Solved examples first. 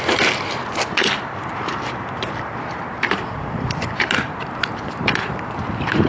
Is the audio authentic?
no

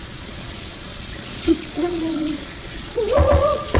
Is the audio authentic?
no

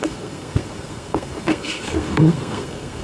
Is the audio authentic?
no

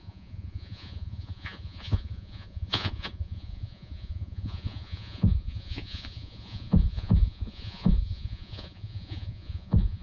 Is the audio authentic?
no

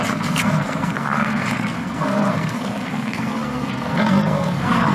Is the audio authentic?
no